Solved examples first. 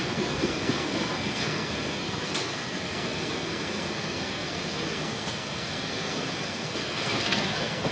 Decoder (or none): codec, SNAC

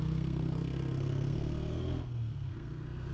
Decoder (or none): codec, SNAC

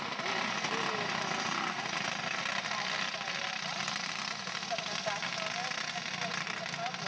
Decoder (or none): none